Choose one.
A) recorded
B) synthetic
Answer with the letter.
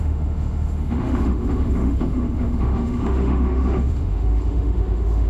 B